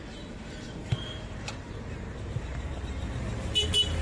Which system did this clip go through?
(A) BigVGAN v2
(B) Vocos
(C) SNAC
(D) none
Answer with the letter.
A